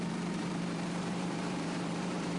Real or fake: fake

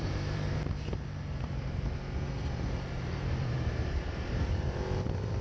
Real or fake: fake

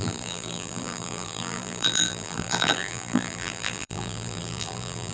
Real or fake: fake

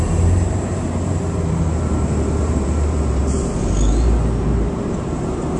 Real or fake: fake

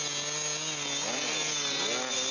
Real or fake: real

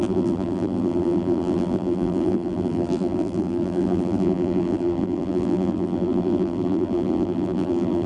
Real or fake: fake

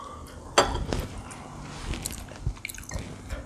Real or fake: real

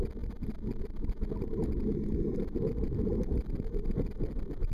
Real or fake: real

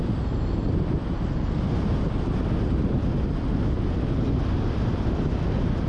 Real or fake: real